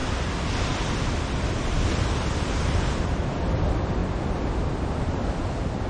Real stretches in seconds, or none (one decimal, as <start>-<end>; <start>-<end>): 0.0-5.9